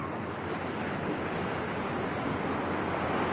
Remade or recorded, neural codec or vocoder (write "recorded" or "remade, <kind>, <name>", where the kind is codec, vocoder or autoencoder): recorded